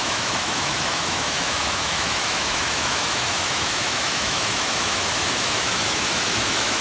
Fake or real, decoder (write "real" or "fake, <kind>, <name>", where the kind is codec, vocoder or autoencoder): fake, autoencoder, DAC-VAE